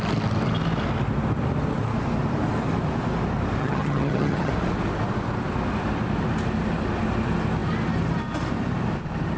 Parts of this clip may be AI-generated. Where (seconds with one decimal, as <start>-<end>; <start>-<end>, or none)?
3.6-4.5